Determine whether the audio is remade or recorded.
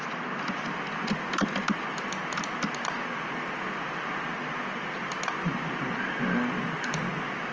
recorded